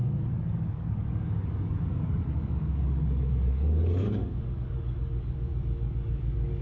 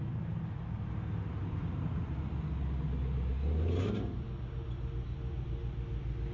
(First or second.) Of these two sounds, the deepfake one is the first